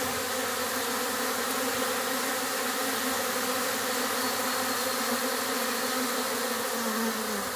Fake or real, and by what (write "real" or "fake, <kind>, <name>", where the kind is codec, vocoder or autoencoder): real